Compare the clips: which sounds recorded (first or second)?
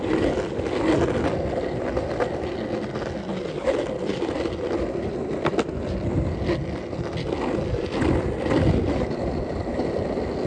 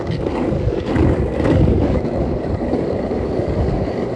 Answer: first